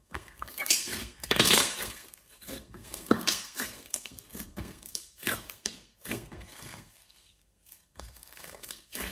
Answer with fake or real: fake